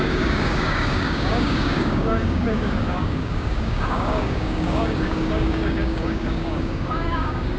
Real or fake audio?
fake